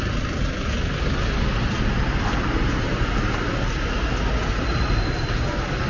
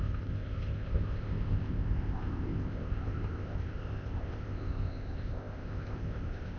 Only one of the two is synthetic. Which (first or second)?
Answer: second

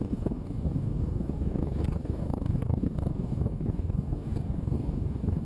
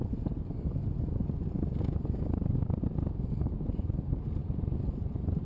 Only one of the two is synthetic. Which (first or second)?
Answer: first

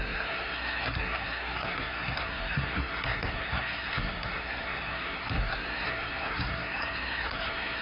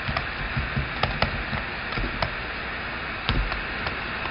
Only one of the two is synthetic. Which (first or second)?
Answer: first